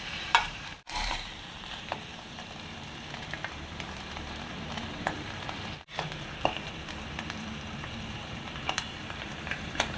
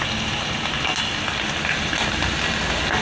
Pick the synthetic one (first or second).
first